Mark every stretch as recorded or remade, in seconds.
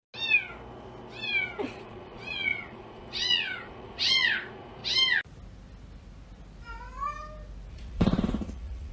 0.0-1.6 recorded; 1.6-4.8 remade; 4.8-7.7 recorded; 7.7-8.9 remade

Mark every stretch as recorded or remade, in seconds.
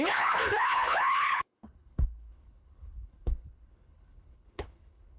0.0-5.2 remade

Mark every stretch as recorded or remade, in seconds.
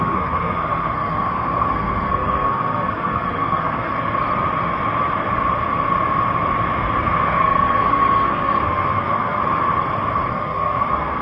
0.0-3.9 remade; 3.9-7.0 recorded; 7.0-9.4 remade; 9.4-10.3 recorded; 10.3-11.2 remade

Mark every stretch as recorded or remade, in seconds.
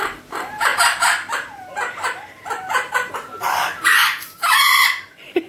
0.0-5.5 remade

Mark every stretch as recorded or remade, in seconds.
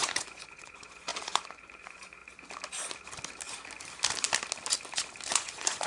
0.0-2.2 remade; 2.2-5.3 recorded; 5.3-5.9 remade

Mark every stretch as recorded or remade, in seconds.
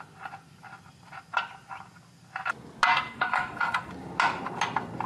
0.0-2.9 recorded; 2.9-3.9 remade; 3.9-5.1 recorded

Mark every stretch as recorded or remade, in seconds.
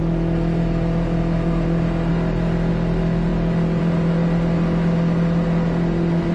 0.0-6.3 recorded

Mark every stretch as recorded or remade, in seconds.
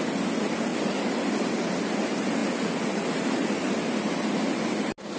0.0-5.2 recorded